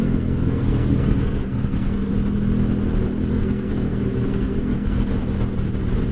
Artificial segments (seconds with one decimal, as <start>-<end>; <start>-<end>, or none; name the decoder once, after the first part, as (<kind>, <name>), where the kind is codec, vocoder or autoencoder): 0.0-2.1 (codec, SNAC); 3.3-5.1